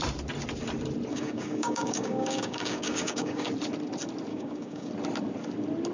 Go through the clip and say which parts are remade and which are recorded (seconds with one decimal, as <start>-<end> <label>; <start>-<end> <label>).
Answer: 0.0-1.1 recorded; 1.1-3.5 remade; 3.5-4.3 recorded; 4.3-4.9 remade; 4.9-5.9 recorded

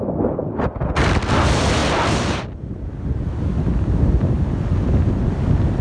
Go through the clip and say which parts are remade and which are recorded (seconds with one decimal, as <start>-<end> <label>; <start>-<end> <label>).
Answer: 0.0-5.8 recorded

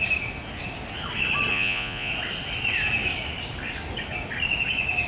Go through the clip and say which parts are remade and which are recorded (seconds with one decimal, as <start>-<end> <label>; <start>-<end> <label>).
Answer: 0.0-1.5 recorded; 1.5-2.1 remade; 2.1-5.1 recorded